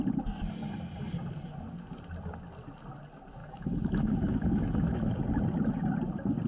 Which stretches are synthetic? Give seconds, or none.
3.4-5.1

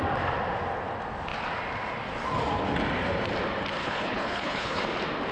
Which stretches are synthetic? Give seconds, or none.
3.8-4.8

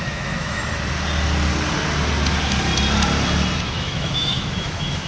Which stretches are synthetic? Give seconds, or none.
0.0-0.6; 3.6-5.1